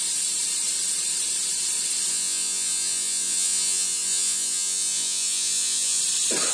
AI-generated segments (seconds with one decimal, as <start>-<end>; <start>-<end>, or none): 2.1-6.0